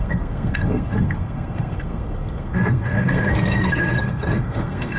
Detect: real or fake fake